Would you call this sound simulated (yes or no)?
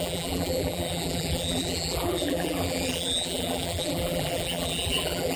yes